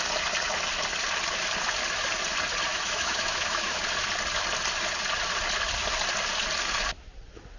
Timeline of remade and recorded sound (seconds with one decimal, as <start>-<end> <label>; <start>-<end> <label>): 0.0-2.7 recorded; 2.7-3.8 remade; 3.8-7.6 recorded

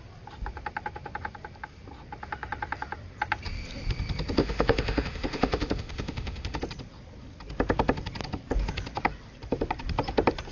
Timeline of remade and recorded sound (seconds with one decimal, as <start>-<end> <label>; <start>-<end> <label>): 0.0-4.4 recorded; 4.4-6.6 remade; 6.6-10.5 recorded

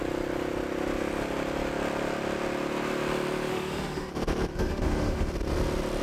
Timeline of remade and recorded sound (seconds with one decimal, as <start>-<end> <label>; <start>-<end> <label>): 0.0-3.5 recorded; 3.5-4.1 remade; 4.1-4.5 recorded; 4.5-5.3 remade; 5.3-6.0 recorded